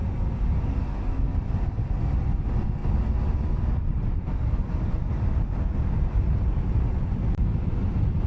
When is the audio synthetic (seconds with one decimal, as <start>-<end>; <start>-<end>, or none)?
none